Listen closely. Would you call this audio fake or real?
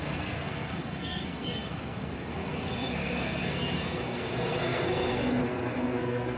fake